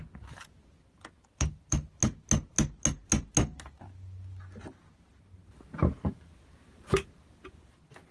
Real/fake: real